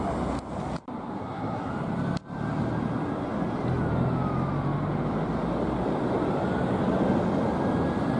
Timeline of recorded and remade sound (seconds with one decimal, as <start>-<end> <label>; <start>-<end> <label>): 0.0-1.2 recorded; 1.2-1.7 remade; 1.7-8.2 recorded